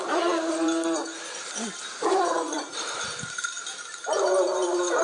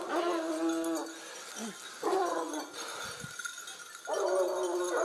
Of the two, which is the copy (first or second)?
first